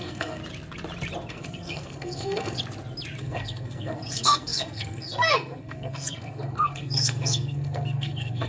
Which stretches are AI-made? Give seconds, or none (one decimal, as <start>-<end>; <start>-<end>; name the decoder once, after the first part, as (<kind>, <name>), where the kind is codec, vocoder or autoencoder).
0.0-0.4 (codec, SNAC); 1.3-2.6; 3.2-8.5